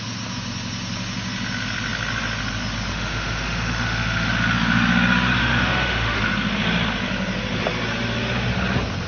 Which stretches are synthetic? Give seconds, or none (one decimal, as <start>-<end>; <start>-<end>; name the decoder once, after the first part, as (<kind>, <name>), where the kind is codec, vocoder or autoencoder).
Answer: 2.9-4.3 (autoencoder, DAC-VAE); 5.4-6.2